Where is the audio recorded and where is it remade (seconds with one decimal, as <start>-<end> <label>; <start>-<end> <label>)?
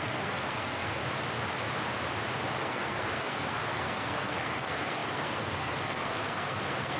0.0-1.0 remade; 1.0-2.6 recorded; 2.6-7.0 remade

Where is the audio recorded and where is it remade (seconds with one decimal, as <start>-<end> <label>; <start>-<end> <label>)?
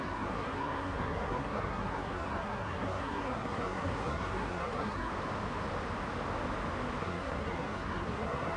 0.0-5.1 remade; 5.1-7.0 recorded; 7.0-8.6 remade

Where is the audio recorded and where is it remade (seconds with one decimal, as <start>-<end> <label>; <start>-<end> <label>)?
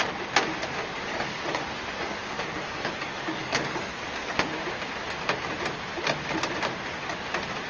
0.0-1.1 recorded; 1.1-1.6 remade; 1.6-2.0 recorded; 2.0-4.3 remade; 4.3-7.7 recorded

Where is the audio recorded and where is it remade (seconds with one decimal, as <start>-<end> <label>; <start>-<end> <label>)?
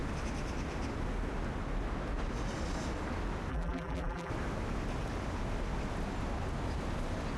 0.0-3.5 recorded; 3.5-4.3 remade; 4.3-7.4 recorded